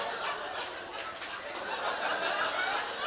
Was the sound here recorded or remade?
recorded